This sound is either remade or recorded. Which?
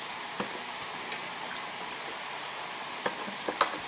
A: recorded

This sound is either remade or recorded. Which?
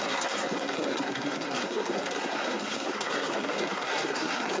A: remade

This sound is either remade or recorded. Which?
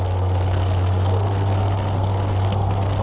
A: remade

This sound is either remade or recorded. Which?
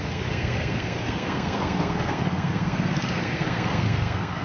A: remade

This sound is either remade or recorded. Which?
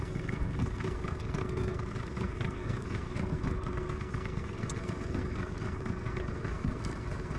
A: remade